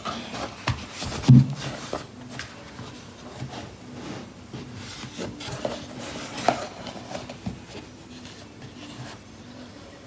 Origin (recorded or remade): recorded